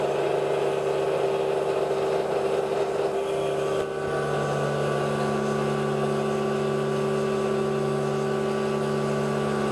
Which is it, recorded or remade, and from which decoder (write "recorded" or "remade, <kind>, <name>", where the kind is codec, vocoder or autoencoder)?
recorded